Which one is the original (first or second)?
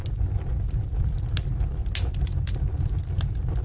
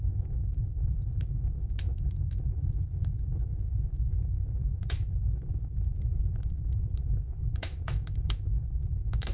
first